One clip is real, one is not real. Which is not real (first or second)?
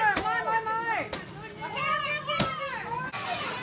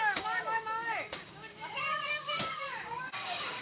second